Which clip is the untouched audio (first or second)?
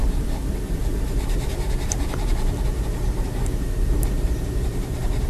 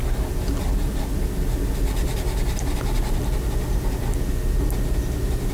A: second